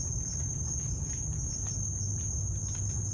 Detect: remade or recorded recorded